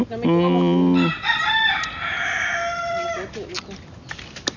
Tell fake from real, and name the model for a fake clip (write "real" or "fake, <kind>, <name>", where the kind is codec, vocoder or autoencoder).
real